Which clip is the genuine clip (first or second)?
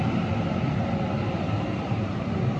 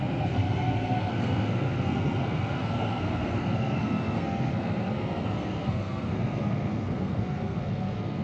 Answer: first